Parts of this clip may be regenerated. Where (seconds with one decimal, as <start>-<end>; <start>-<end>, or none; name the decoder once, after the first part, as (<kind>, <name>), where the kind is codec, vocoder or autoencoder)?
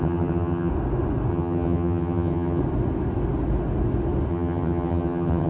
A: 0.0-0.7 (vocoder, HiFi-GAN); 1.3-2.6; 4.3-5.5